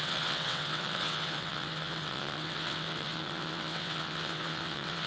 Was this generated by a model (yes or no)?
yes